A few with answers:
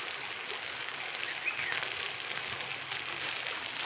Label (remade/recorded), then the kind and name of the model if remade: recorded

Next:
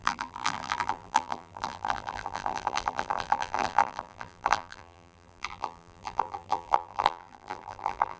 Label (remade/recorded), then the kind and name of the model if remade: remade, vocoder, BigVGAN v2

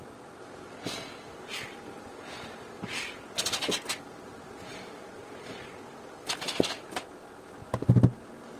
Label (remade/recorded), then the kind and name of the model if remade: recorded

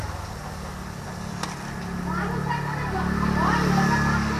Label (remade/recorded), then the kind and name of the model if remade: recorded